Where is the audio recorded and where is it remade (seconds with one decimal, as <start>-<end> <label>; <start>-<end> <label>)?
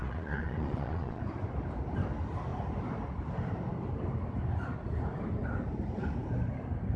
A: 0.0-1.2 remade; 1.2-7.0 recorded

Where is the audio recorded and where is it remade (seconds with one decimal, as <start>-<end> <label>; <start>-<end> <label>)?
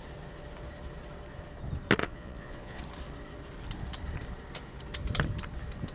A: 0.0-2.0 recorded; 2.0-2.8 remade; 2.8-5.9 recorded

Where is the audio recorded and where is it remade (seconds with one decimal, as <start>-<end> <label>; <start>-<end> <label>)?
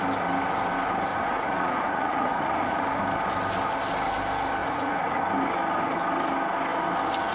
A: 0.0-1.1 recorded; 1.1-2.8 remade; 2.8-4.6 recorded; 4.6-5.2 remade; 5.2-7.3 recorded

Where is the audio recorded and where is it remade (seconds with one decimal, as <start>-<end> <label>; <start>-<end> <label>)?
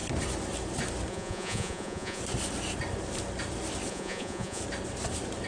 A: 0.0-1.1 recorded; 1.1-2.2 remade; 2.2-3.9 recorded; 3.9-4.6 remade; 4.6-5.5 recorded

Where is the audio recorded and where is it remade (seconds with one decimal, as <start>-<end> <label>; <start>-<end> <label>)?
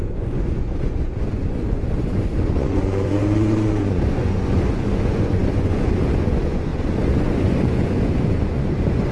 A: 0.0-9.1 remade